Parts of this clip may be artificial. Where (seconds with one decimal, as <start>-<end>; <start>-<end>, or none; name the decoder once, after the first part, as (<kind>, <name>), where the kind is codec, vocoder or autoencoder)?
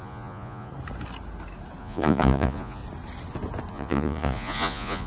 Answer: 0.0-0.7 (vocoder, Vocos); 1.8-2.8; 3.7-5.1